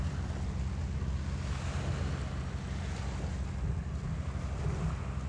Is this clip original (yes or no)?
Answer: yes